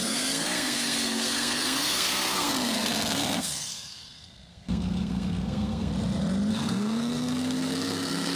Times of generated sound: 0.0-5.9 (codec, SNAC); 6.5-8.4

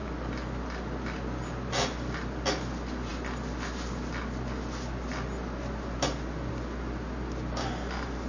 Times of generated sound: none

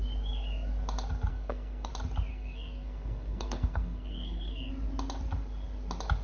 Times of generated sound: 1.3-1.9 (codec, SNAC); 2.3-4.7

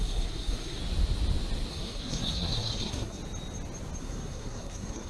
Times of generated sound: 0.0-0.8 (codec, SNAC); 1.7-3.2; 4.0-5.1